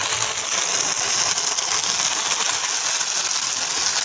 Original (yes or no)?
yes